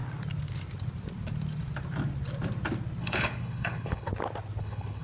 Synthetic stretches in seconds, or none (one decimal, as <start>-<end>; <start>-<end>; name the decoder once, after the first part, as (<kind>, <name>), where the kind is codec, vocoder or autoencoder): 3.0-4.1 (codec, HILCodec); 4.6-5.0